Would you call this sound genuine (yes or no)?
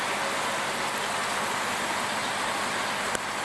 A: yes